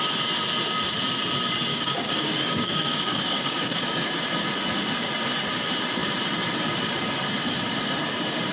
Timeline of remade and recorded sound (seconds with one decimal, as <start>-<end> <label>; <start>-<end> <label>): 0.0-1.7 recorded; 1.7-4.1 remade; 4.1-8.5 recorded